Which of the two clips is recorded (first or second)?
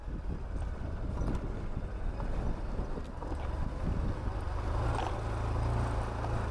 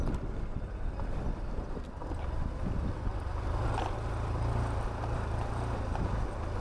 first